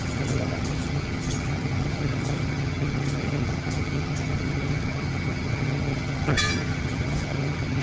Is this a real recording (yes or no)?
no